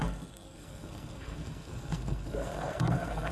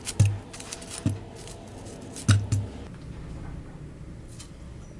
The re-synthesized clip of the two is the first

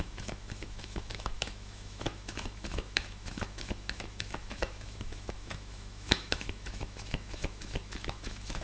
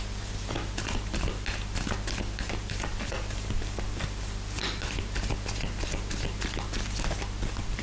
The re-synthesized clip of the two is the first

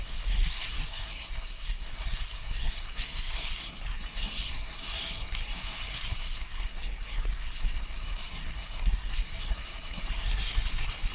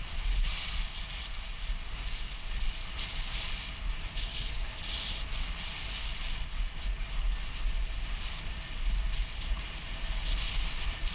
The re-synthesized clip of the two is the first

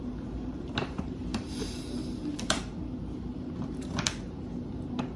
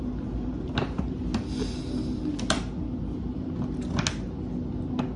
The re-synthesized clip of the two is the first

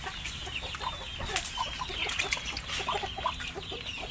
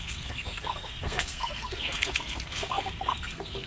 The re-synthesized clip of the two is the second